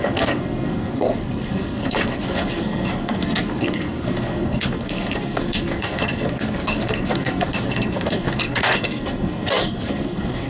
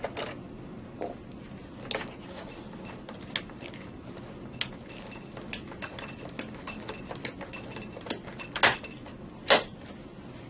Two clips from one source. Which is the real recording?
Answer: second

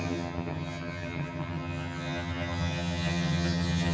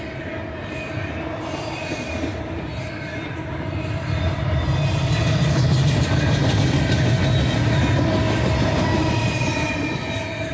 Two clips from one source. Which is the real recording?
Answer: second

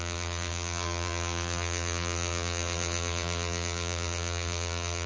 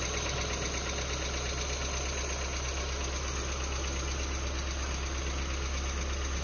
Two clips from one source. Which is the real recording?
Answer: second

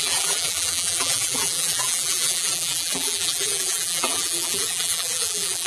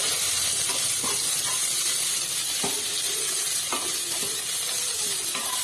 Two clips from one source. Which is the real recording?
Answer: second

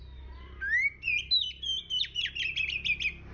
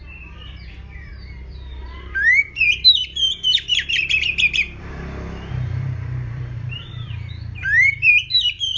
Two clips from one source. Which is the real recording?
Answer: first